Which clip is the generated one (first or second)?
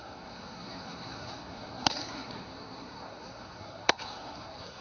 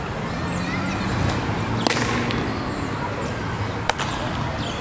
first